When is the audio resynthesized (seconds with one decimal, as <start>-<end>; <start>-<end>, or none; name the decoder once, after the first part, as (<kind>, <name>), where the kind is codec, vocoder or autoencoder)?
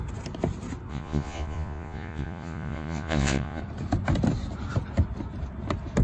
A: 0.9-3.6 (vocoder, Vocos)